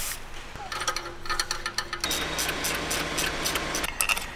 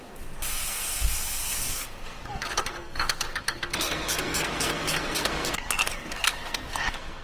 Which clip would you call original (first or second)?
first